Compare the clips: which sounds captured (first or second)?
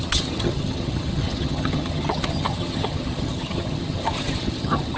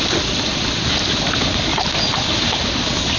second